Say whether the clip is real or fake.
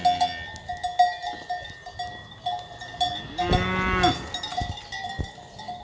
real